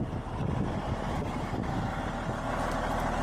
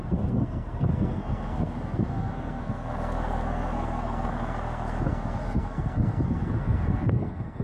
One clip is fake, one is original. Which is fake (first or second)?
second